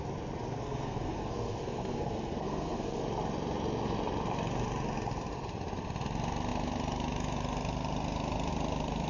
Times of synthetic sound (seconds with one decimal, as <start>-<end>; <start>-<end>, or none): 0.6-3.0